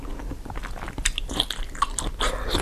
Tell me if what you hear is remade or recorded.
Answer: recorded